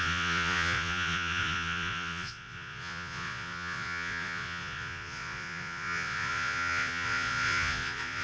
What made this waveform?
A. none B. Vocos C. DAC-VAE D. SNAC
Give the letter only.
B